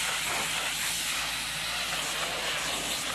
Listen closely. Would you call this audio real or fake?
real